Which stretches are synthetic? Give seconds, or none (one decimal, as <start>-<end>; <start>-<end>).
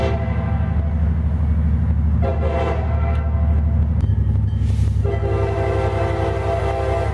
none